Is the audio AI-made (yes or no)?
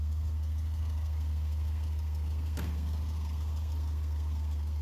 yes